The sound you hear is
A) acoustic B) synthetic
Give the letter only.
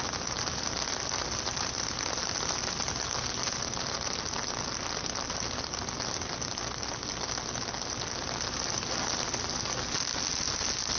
A